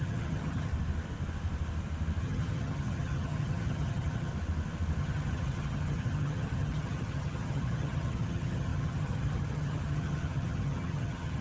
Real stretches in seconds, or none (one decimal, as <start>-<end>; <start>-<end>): 0.7-2.2; 4.3-5.0